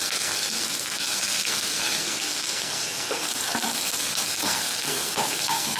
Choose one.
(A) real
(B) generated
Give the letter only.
B